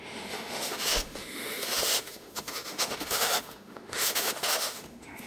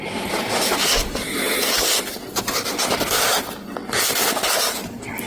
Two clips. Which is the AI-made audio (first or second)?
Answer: first